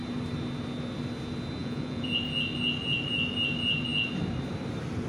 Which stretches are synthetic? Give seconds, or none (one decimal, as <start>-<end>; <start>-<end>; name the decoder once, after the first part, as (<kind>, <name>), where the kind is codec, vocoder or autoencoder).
1.6-2.1 (vocoder, Vocos)